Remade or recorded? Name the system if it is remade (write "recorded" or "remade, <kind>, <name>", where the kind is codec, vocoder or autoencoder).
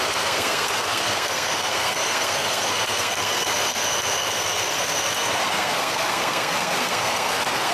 remade, codec, SNAC